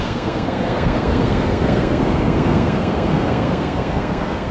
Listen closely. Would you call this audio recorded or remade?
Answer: remade